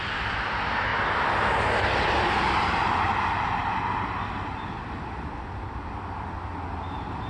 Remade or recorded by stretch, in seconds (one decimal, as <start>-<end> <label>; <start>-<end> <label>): 0.0-7.3 recorded